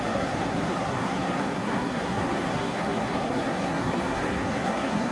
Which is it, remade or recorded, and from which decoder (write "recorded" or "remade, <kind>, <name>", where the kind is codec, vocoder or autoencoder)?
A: remade, codec, SNAC